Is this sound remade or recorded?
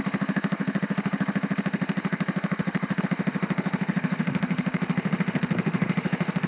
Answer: remade